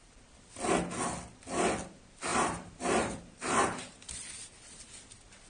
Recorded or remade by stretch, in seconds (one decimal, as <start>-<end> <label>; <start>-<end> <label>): 0.0-2.3 recorded; 2.3-4.2 remade; 4.2-5.5 recorded